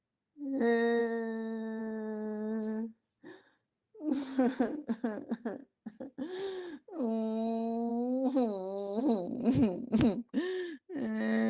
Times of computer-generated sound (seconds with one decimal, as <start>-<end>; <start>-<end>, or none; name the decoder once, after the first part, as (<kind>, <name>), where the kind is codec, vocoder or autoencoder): 1.0-1.8 (autoencoder, DAC-VAE); 7.9-9.0